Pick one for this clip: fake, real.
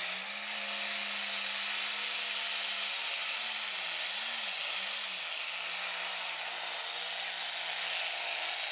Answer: real